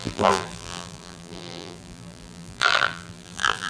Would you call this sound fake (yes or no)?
yes